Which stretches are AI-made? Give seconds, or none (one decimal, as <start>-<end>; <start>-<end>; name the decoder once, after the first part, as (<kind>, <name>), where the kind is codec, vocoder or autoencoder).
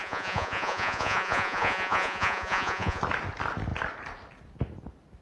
0.0-3.0 (vocoder, Vocos)